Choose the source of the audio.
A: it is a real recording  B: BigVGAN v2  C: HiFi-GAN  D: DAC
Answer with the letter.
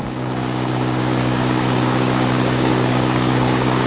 D